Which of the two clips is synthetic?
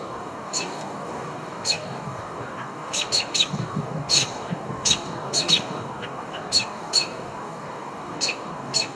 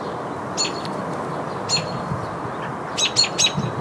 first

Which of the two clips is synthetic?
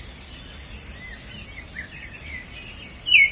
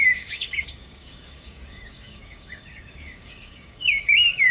second